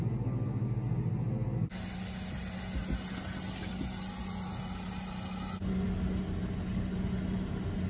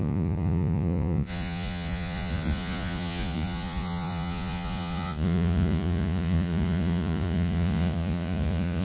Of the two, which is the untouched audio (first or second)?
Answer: first